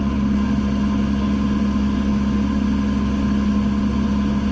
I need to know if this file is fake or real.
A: real